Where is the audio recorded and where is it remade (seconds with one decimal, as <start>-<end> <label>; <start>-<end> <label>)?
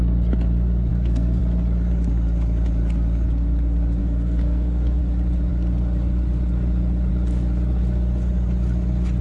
0.0-0.9 recorded; 0.9-1.4 remade; 1.4-4.0 recorded; 4.0-5.0 remade; 5.0-9.2 recorded